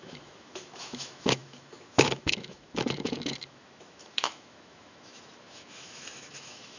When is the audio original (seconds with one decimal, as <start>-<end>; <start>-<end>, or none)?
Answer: none